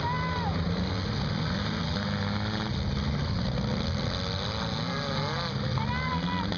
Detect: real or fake real